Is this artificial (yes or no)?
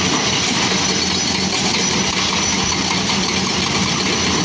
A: no